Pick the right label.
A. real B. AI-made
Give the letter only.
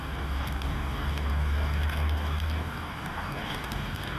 B